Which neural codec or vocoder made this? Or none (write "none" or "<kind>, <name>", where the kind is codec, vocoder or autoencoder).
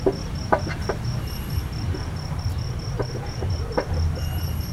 vocoder, BigVGAN v2